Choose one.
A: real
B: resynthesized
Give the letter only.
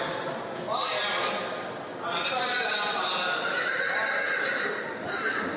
A